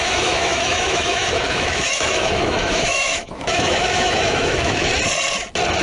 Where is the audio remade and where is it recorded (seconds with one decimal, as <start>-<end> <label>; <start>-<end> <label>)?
0.0-4.9 remade; 4.9-5.8 recorded